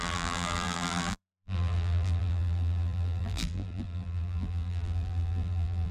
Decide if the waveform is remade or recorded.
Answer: remade